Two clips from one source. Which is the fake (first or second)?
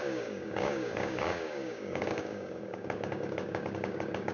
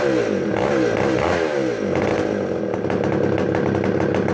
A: first